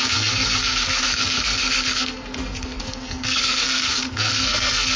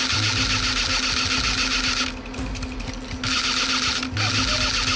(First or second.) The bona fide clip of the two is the second